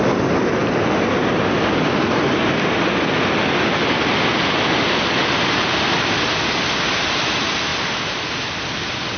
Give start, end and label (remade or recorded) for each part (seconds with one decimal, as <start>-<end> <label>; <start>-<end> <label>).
0.0-9.2 recorded